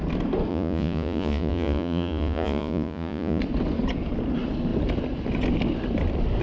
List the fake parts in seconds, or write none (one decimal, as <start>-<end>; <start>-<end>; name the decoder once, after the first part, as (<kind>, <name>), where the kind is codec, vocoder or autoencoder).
0.5-3.4 (vocoder, Vocos)